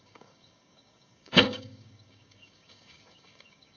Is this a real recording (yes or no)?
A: no